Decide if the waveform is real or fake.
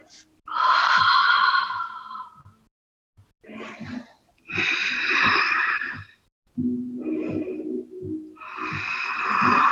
fake